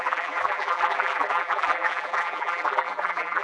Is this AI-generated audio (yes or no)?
yes